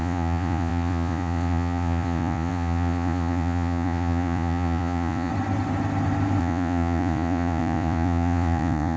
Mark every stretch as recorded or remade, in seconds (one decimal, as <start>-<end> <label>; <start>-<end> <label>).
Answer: 0.0-5.3 remade; 5.3-6.4 recorded; 6.4-9.0 remade